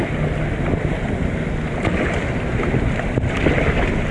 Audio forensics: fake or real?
real